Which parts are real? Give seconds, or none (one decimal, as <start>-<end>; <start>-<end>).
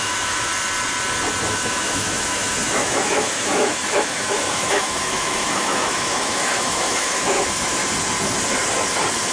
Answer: 0.5-1.5; 7.8-9.3